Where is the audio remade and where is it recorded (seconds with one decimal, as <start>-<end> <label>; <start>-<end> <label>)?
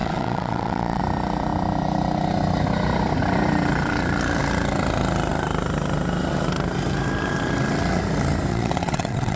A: 0.0-1.0 remade; 1.0-8.5 recorded; 8.5-9.4 remade